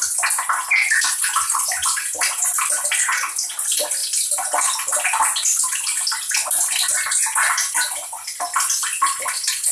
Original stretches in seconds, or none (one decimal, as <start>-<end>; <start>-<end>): 0.0-9.7